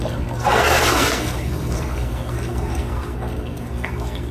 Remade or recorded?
remade